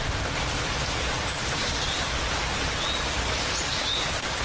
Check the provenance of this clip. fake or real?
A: fake